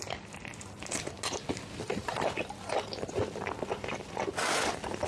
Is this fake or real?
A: real